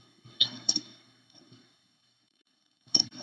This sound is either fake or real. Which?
fake